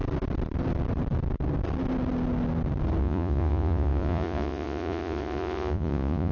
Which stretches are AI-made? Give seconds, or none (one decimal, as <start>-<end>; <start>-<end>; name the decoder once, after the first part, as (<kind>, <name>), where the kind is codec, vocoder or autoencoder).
3.0-6.3 (vocoder, Vocos)